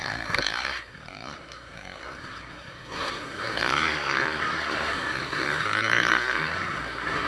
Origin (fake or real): fake